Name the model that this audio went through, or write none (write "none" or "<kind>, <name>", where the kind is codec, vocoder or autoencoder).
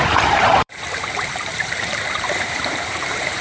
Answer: vocoder, BigVGAN v2